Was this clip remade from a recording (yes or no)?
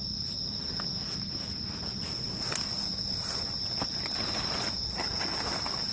no